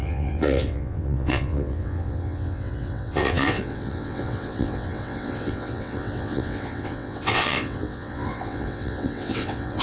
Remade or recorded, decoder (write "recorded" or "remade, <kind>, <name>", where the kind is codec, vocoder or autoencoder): remade, vocoder, WaveNeXt